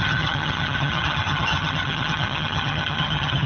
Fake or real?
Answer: fake